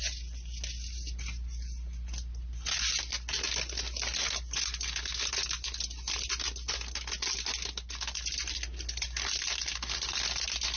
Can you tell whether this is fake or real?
real